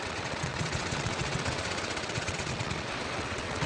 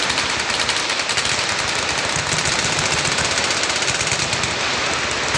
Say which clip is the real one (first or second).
second